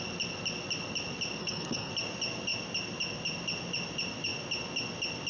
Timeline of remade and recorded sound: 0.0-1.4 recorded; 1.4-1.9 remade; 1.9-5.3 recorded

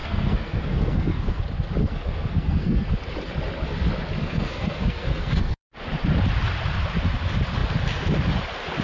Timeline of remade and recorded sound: 0.0-1.4 remade; 1.4-1.8 recorded; 1.8-2.9 remade; 2.9-4.2 recorded; 4.2-5.7 remade; 5.7-8.8 recorded

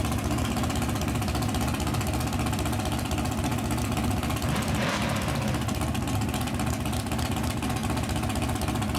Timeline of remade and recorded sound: 0.0-9.0 recorded

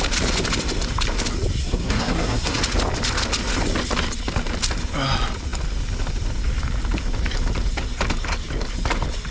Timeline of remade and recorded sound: 0.0-1.6 recorded; 1.6-2.6 remade; 2.6-9.3 recorded

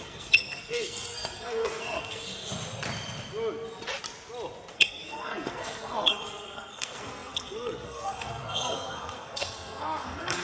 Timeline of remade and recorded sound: 0.0-2.5 remade; 2.5-4.7 recorded; 4.7-10.4 remade